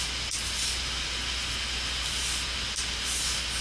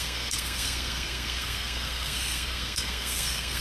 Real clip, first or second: first